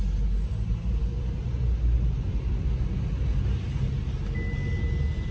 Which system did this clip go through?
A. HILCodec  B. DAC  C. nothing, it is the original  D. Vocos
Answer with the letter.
C